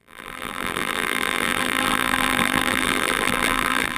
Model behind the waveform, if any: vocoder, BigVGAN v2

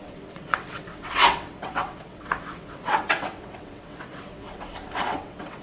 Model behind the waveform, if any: vocoder, WaveNeXt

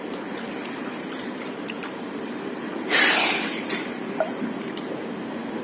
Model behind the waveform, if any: vocoder, BigVGAN v2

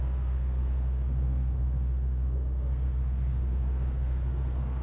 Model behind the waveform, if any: codec, SNAC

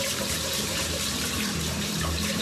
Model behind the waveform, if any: vocoder, BigVGAN v2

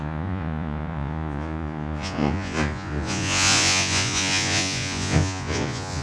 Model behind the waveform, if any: vocoder, Vocos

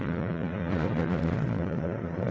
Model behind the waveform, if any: vocoder, Vocos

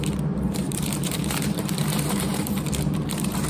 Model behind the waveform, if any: vocoder, BigVGAN v2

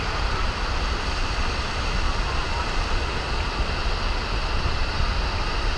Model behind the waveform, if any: none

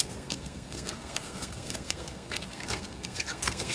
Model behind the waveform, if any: codec, SNAC